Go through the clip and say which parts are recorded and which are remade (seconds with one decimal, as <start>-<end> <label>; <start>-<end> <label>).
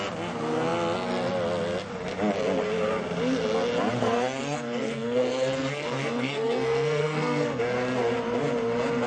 0.0-4.0 recorded; 4.0-7.6 remade; 7.6-9.1 recorded